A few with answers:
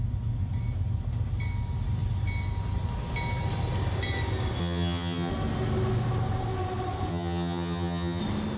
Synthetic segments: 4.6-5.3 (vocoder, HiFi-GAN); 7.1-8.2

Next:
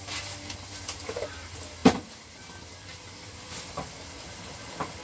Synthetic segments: none

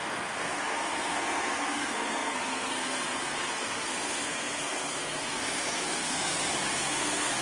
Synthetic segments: 0.0-7.4 (codec, SNAC)

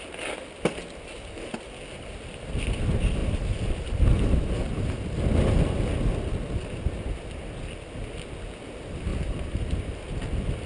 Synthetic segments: none

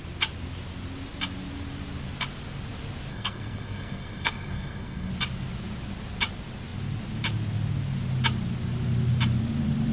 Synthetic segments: 3.1-5.1 (codec, SNAC)

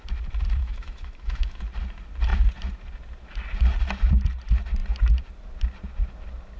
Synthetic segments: 0.6-1.6 (autoencoder, DAC-VAE)

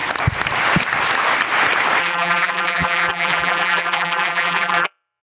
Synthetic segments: 2.0-5.2 (vocoder, BigVGAN v2)

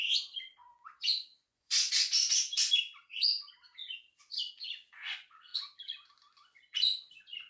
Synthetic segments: 0.0-7.5 (vocoder, Vocos)